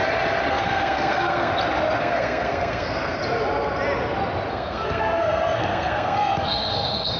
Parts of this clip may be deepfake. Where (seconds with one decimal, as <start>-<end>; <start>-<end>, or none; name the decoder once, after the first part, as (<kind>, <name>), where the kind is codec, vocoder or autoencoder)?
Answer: 0.5-1.5 (codec, SNAC); 2.0-3.2; 4.5-7.2